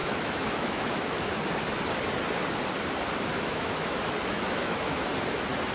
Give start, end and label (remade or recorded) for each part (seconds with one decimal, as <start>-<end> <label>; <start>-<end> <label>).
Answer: 0.0-1.3 remade; 1.3-3.3 recorded; 3.3-5.0 remade; 5.0-5.7 recorded